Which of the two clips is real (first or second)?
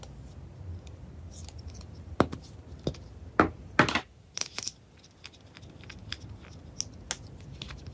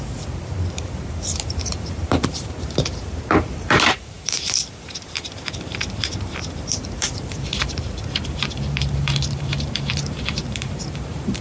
first